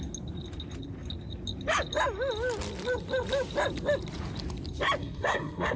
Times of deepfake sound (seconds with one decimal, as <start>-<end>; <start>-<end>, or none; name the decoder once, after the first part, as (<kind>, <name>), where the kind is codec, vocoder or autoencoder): 5.0-5.8 (codec, SNAC)